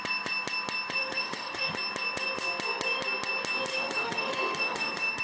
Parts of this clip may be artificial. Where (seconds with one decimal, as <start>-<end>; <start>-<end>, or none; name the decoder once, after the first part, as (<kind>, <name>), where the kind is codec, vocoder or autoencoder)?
1.0-1.7 (autoencoder, DAC-VAE); 3.7-5.2